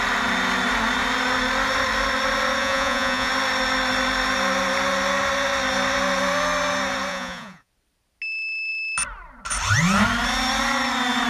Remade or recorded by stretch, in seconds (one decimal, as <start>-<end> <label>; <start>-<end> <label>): 0.0-2.6 recorded; 2.6-3.3 remade; 3.3-7.1 recorded; 7.1-7.7 remade; 7.7-11.3 recorded